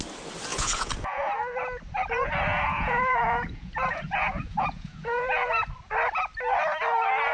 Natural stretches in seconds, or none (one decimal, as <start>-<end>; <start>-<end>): 0.0-0.5; 1.3-2.5; 5.5-7.3